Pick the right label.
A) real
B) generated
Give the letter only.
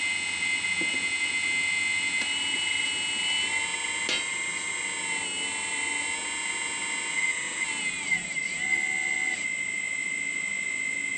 A